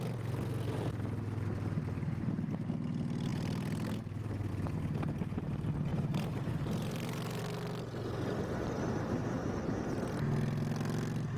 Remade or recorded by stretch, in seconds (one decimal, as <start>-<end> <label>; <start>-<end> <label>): 0.0-3.3 recorded; 3.3-4.5 remade; 4.5-5.9 recorded; 5.9-7.4 remade; 7.4-11.4 recorded